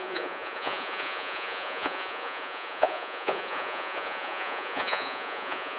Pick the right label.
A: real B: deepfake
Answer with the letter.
B